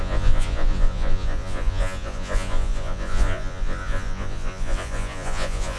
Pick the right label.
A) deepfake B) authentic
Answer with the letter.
A